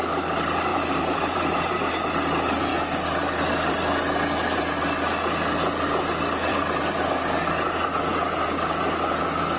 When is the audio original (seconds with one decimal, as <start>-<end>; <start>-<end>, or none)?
0.0-0.7; 1.8-6.5; 7.0-9.6